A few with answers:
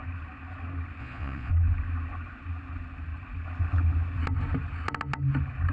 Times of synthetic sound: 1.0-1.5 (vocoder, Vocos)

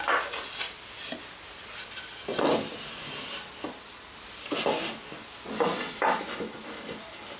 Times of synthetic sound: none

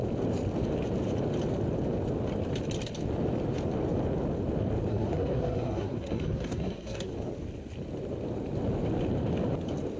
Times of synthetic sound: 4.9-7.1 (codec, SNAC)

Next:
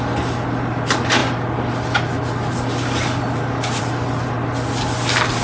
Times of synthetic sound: none